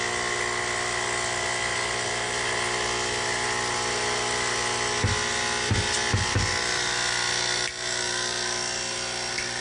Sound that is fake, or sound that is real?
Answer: real